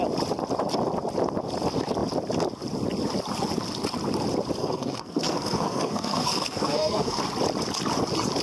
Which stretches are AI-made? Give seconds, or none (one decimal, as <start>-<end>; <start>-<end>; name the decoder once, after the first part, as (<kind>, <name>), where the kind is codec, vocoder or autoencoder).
4.6-7.2 (codec, SNAC)